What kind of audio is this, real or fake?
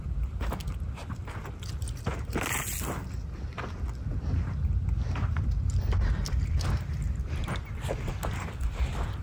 real